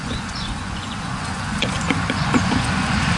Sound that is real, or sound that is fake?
fake